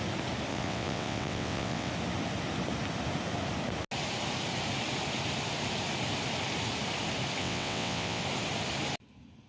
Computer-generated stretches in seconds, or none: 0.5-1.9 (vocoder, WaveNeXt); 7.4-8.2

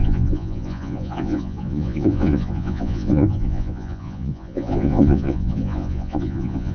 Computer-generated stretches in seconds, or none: 0.0-6.7 (vocoder, Vocos)

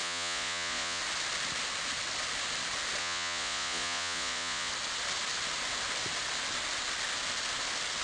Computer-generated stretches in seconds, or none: 0.0-1.0 (vocoder, Vocos); 3.0-4.7

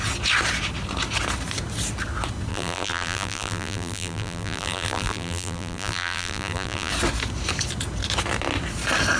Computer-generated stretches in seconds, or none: 2.5-6.9 (vocoder, BigVGAN v2)

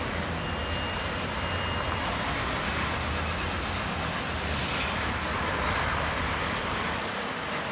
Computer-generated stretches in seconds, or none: none

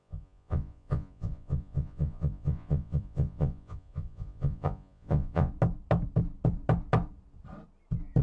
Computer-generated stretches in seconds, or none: 0.0-5.5 (vocoder, Vocos)